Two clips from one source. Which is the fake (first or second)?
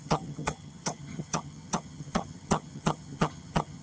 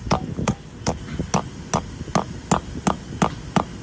first